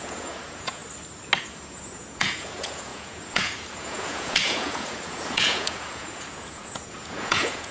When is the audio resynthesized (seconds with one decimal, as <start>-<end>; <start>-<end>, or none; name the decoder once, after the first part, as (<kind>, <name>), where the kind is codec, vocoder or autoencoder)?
0.0-0.8 (vocoder, Vocos); 1.4-7.7